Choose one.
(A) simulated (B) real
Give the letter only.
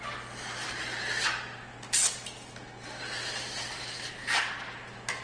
B